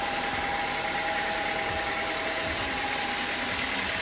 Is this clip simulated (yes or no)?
no